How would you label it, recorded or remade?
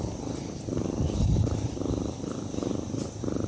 recorded